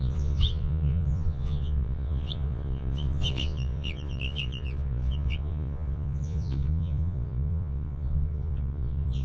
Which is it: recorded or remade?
remade